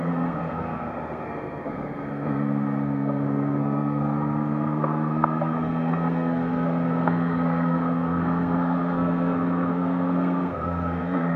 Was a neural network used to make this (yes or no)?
yes